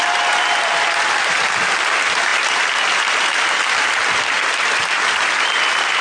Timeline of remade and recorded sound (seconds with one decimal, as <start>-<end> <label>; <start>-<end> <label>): 0.0-6.0 recorded

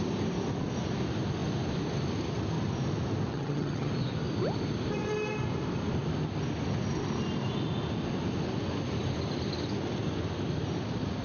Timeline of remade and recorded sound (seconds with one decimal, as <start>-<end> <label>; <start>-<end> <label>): 0.0-3.3 recorded; 3.3-3.9 remade; 3.9-11.2 recorded

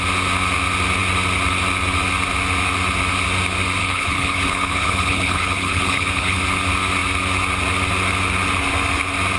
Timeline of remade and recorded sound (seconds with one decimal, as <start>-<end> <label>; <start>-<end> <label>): 0.0-3.8 recorded; 3.8-6.4 remade; 6.4-9.4 recorded

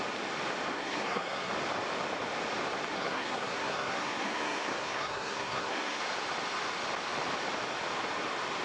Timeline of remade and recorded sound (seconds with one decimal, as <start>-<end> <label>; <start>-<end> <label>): 0.0-0.7 recorded; 0.7-1.5 remade; 1.5-2.9 recorded; 2.9-6.0 remade; 6.0-8.6 recorded

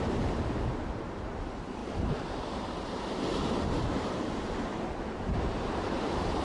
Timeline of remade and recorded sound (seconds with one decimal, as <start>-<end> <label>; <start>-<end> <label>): 0.0-6.4 remade

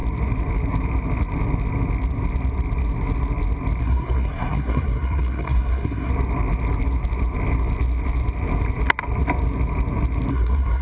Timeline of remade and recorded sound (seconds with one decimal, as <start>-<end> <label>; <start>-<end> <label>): 0.0-3.8 recorded; 3.8-6.1 remade; 6.1-10.3 recorded; 10.3-10.8 remade